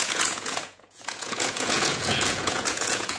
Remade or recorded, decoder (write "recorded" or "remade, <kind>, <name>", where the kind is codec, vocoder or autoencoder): remade, vocoder, Vocos